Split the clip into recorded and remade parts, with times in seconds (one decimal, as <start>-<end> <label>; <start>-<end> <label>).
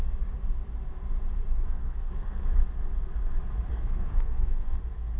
0.0-1.6 recorded; 1.6-2.4 remade; 2.4-3.7 recorded; 3.7-4.8 remade; 4.8-5.2 recorded